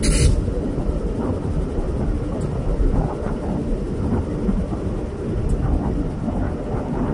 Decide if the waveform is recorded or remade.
recorded